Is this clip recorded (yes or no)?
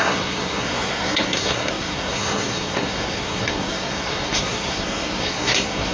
no